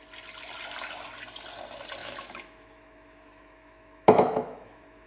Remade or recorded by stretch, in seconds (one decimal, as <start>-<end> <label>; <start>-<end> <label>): 0.0-2.0 recorded; 2.0-5.1 remade